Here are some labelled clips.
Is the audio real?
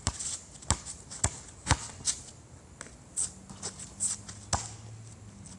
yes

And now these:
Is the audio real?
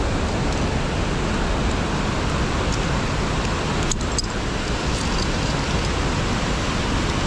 yes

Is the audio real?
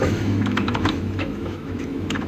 no